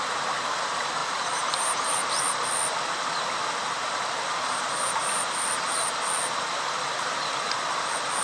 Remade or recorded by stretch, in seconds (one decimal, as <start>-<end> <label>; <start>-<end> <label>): 0.0-1.0 recorded; 1.0-1.9 remade; 1.9-3.6 recorded; 3.6-5.3 remade; 5.3-8.2 recorded